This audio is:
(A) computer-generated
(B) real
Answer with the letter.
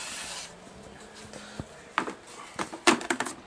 B